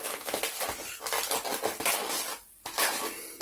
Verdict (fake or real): real